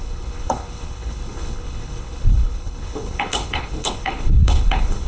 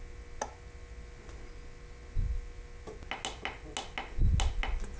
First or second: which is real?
second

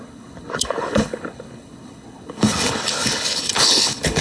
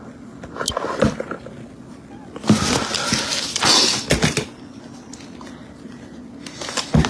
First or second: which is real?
second